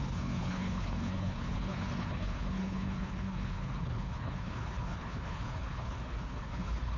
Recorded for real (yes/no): no